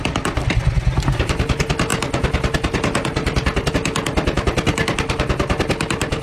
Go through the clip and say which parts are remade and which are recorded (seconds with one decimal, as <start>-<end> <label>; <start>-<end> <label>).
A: 0.0-6.2 recorded